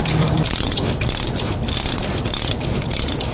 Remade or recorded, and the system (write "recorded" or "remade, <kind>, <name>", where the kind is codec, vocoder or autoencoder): remade, vocoder, BigVGAN v2